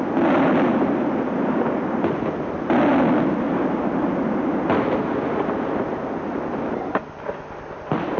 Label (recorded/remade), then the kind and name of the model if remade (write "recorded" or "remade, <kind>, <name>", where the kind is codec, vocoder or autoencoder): recorded